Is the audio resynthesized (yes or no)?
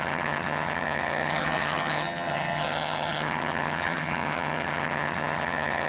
yes